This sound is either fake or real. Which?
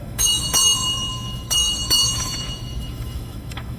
fake